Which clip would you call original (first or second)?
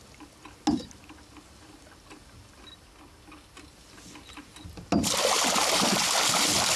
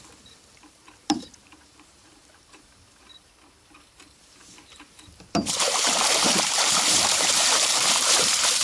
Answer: first